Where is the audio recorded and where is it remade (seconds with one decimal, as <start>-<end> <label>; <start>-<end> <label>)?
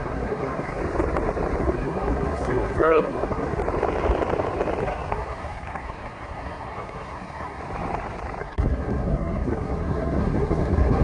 0.0-0.8 remade; 0.8-1.6 recorded; 1.6-3.6 remade; 3.6-4.8 recorded; 4.8-7.6 remade; 7.6-8.4 recorded; 8.4-11.0 remade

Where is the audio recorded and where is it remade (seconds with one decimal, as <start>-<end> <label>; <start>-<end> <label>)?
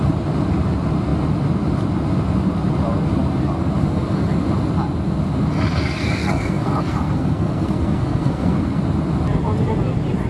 0.0-5.8 recorded; 5.8-8.8 remade; 8.8-10.3 recorded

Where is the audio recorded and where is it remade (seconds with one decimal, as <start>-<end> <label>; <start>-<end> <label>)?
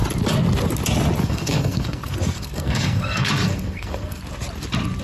0.0-1.2 recorded; 1.2-4.2 remade; 4.2-5.0 recorded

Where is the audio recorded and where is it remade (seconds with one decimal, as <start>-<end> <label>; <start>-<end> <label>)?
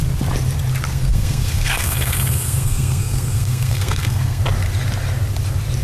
0.0-0.9 recorded; 0.9-4.4 remade; 4.4-5.8 recorded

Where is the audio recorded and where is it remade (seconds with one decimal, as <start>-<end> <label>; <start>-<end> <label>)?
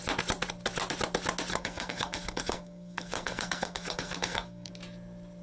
0.0-1.5 recorded; 1.5-4.7 remade; 4.7-5.4 recorded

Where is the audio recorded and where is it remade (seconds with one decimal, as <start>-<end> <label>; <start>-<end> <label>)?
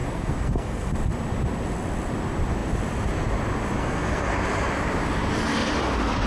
0.0-0.9 remade; 0.9-3.8 recorded; 3.8-4.4 remade; 4.4-6.3 recorded